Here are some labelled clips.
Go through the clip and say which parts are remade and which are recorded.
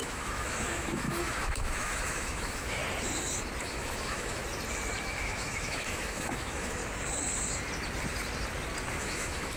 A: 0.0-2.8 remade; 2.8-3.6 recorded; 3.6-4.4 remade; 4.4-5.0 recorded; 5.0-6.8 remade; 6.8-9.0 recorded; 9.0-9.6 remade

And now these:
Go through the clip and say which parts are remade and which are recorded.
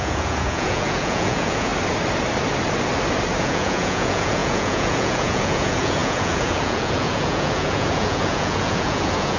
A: 0.0-1.7 remade; 1.7-3.4 recorded; 3.4-9.4 remade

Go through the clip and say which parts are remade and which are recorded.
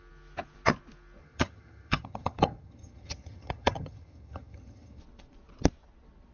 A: 0.0-1.2 recorded; 1.2-5.0 remade; 5.0-6.3 recorded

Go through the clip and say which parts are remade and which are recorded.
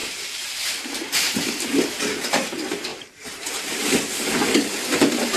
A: 0.0-0.8 remade; 0.8-2.9 recorded; 2.9-5.4 remade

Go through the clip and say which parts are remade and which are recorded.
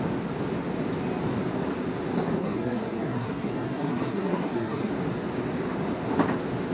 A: 0.0-2.4 recorded; 2.4-4.9 remade; 4.9-6.7 recorded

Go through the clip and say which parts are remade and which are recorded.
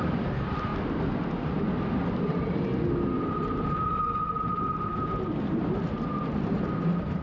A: 0.0-0.7 remade; 0.7-2.2 recorded; 2.2-2.7 remade; 2.7-6.3 recorded; 6.3-7.2 remade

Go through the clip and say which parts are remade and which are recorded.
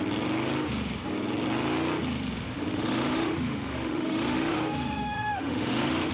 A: 0.0-2.7 recorded; 2.7-6.1 remade